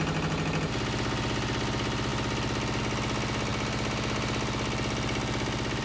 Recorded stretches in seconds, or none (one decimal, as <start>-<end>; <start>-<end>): 0.0-5.8